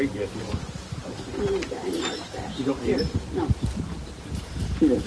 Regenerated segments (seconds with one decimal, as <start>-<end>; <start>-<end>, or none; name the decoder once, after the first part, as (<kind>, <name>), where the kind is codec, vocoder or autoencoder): none